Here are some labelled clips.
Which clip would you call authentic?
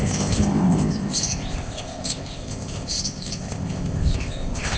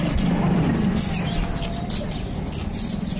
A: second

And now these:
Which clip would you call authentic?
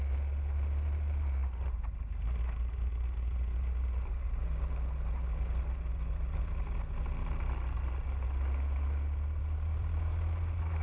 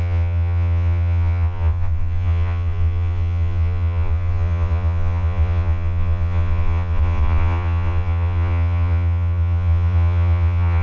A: first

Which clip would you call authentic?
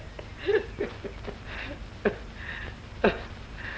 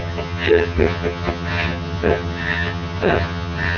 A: first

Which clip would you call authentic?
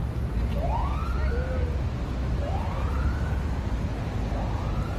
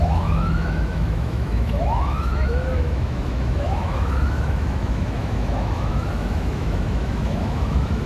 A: first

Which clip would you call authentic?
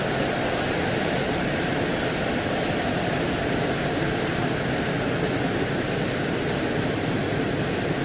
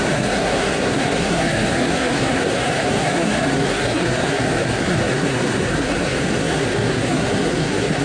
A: first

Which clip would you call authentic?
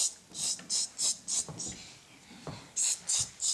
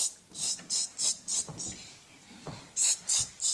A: first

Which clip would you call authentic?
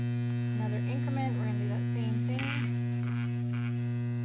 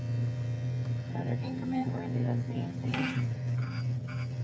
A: first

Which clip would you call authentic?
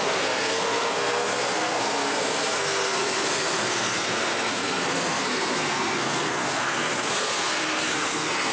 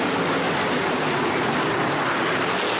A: second